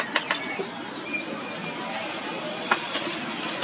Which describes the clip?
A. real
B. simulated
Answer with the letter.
A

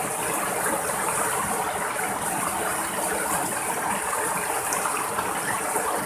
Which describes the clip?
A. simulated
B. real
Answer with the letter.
B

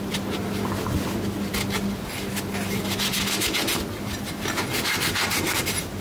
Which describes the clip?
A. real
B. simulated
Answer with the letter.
A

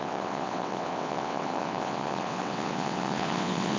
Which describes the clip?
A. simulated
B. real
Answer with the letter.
A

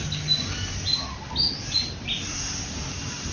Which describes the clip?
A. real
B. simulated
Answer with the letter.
A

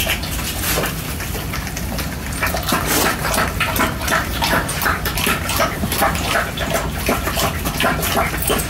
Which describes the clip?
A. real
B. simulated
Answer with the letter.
A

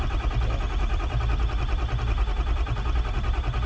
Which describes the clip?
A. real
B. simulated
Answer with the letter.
A